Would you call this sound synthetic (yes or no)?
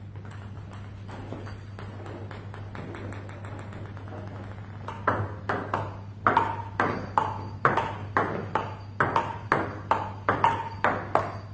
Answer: no